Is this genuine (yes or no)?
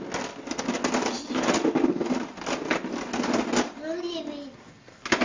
yes